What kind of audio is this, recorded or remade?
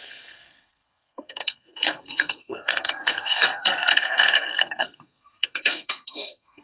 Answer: remade